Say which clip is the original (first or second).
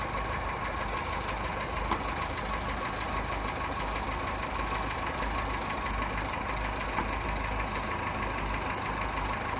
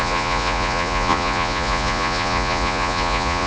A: first